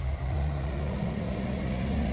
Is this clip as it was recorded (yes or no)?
no